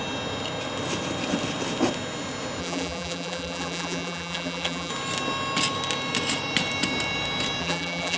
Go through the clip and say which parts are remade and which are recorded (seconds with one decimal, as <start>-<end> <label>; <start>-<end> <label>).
0.0-2.6 recorded; 2.6-4.9 remade; 4.9-7.6 recorded; 7.6-8.2 remade